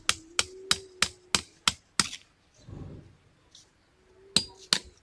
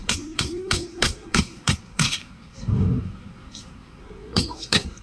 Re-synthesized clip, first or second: second